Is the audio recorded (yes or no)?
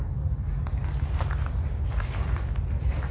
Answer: yes